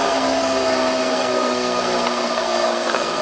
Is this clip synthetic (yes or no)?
yes